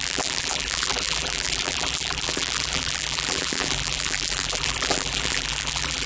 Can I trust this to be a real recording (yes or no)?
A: no